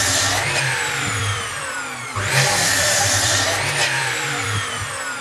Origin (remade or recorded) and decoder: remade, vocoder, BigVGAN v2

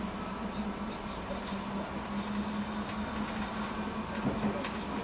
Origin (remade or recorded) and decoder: recorded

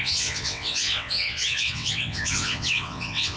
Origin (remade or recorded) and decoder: remade, vocoder, WaveNeXt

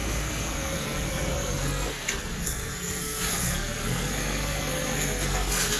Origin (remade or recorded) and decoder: remade, codec, SNAC